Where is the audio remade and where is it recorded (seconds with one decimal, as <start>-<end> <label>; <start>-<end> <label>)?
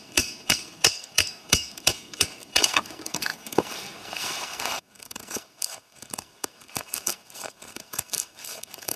0.0-9.0 remade